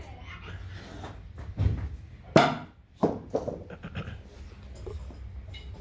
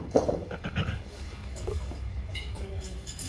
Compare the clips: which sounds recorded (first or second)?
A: first